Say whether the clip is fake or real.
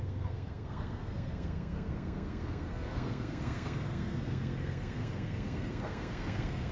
fake